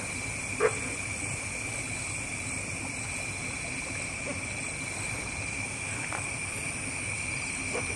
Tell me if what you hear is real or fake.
real